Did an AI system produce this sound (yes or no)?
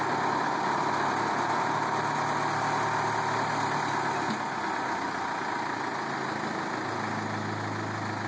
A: no